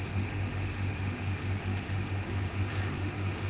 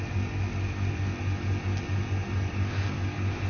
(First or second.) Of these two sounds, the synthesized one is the first